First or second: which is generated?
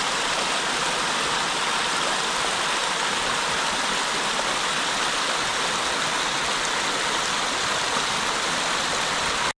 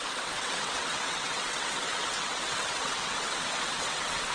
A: second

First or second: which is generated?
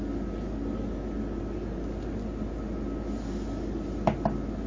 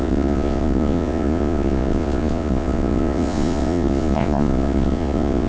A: second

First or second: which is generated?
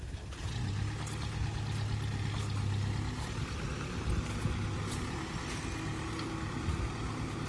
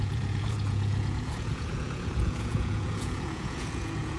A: second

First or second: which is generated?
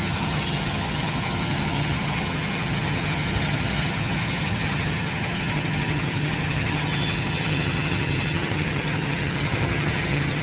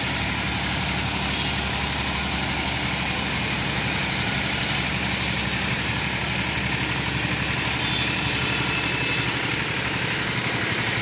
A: first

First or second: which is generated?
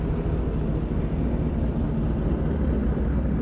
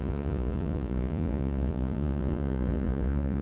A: second